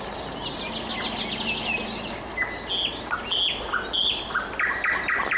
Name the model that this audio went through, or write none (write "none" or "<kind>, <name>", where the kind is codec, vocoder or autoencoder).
none